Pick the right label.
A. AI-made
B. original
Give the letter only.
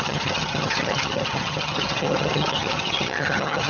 A